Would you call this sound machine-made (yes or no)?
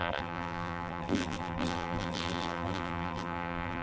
yes